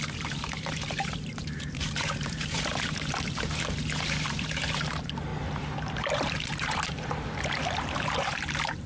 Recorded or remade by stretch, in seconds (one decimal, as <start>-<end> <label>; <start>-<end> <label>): 0.0-8.9 remade